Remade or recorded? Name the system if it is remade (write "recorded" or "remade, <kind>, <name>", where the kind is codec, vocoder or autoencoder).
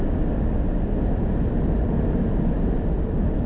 remade, vocoder, BigVGAN v2